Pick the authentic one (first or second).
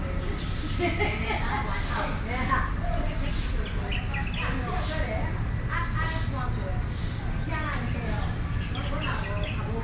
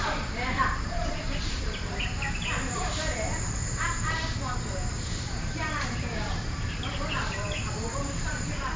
first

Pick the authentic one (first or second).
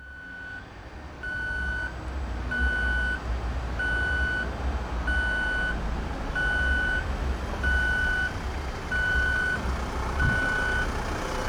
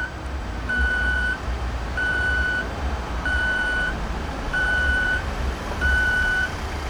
first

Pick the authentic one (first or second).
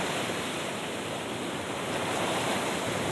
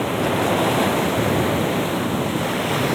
second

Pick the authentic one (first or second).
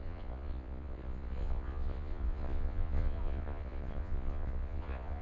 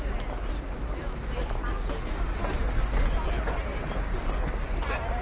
second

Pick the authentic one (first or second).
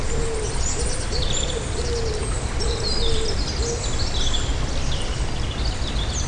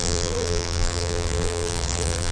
first